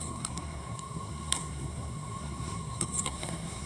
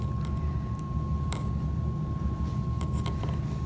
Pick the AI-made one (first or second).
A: first